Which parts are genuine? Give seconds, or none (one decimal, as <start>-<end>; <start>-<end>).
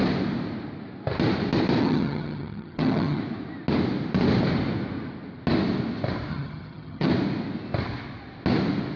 0.0-1.8; 3.2-6.3; 7.1-9.0